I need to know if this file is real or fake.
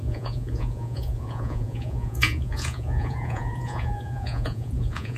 fake